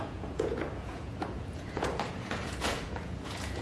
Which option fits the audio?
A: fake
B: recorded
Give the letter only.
A